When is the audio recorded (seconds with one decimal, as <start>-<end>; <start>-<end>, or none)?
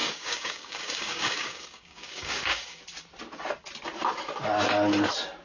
2.8-5.4